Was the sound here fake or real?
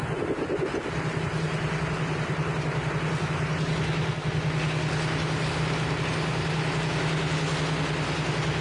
real